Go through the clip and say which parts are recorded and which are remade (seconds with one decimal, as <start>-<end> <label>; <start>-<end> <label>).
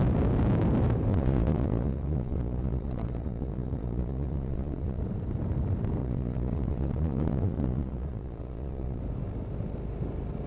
0.0-1.1 recorded; 1.1-5.0 remade; 5.0-6.0 recorded; 6.0-9.0 remade; 9.0-10.5 recorded